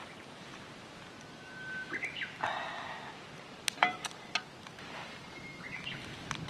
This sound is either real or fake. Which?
real